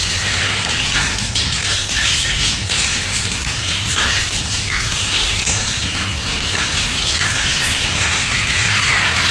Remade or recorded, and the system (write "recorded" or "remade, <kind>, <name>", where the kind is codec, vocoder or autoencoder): remade, codec, SNAC